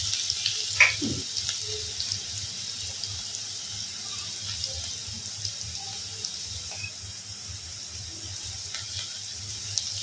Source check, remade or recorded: recorded